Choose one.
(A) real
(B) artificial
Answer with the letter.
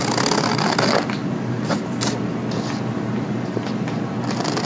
A